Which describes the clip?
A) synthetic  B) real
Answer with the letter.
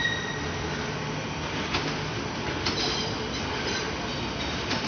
B